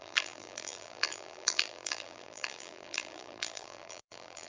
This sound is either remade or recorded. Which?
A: remade